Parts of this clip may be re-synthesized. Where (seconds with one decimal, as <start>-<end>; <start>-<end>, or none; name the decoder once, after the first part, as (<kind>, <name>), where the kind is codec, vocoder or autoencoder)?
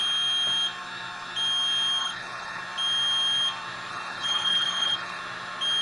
2.0-2.6 (codec, HILCodec); 3.9-5.2